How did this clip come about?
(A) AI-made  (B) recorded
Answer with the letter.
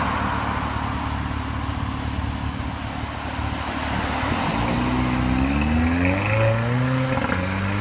B